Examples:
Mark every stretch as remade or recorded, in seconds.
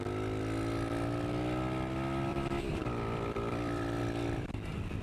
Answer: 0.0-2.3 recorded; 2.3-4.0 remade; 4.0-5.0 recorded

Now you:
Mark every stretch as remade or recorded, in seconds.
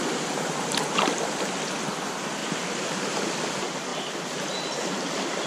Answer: 0.0-2.4 recorded; 2.4-3.2 remade; 3.2-5.5 recorded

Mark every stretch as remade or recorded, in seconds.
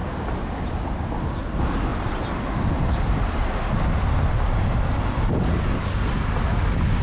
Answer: 0.0-1.9 recorded; 1.9-5.3 remade; 5.3-7.0 recorded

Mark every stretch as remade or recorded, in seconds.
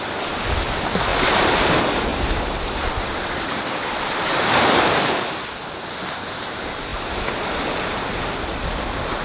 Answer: 0.0-2.1 recorded; 2.1-5.0 remade; 5.0-9.2 recorded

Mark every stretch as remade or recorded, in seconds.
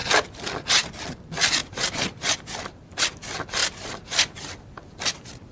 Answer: 0.0-0.7 recorded; 0.7-5.5 remade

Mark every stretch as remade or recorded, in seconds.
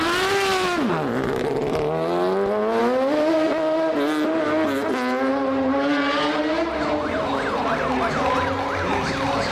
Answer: 0.0-9.5 recorded